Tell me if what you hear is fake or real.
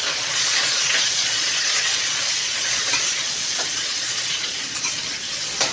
fake